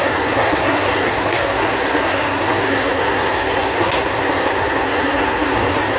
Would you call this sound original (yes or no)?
no